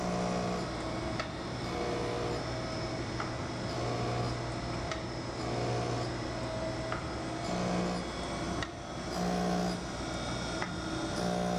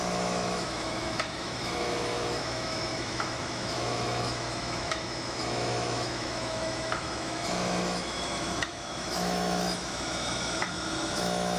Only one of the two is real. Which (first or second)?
first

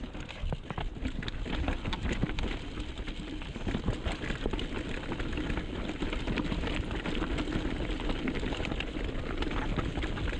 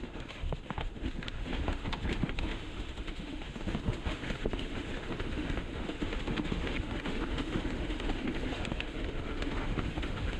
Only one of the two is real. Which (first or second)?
first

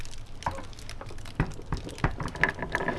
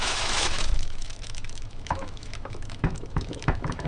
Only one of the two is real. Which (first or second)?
first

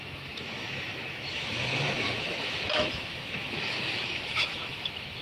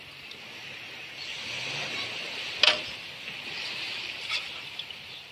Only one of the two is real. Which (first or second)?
second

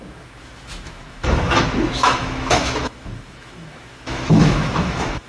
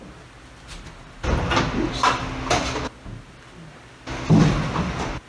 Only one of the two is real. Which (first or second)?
second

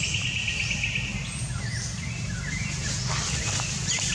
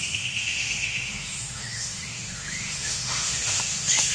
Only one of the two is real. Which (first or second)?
first